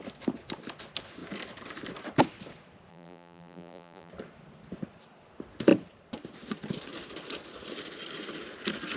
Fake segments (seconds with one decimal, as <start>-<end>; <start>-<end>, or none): 2.9-4.1